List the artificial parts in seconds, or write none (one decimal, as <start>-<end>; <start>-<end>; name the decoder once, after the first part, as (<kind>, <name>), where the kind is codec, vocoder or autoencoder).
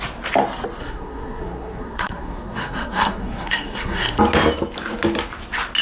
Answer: 0.8-4.2 (codec, SNAC)